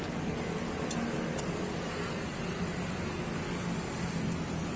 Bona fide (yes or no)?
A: yes